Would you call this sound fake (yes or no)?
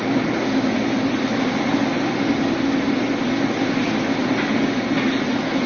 no